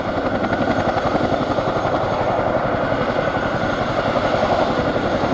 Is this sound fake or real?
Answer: real